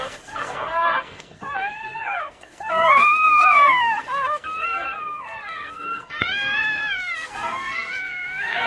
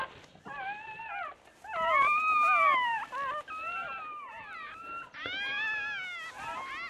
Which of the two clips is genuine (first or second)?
second